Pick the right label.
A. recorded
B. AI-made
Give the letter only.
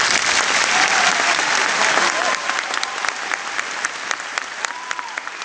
A